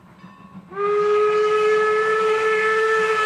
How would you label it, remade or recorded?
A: recorded